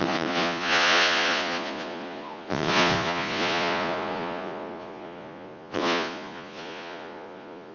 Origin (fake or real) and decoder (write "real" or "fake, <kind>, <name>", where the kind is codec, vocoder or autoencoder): fake, vocoder, Vocos